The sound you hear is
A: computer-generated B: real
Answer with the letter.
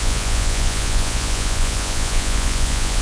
A